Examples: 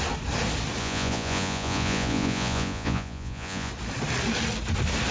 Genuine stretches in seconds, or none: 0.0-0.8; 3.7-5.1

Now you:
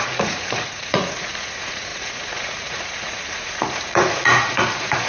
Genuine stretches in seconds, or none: none

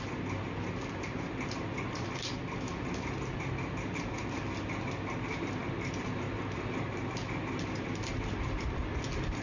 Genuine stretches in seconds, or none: 0.0-9.4

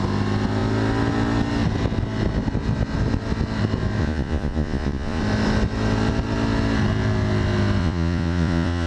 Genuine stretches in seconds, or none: 0.0-4.0; 5.2-7.8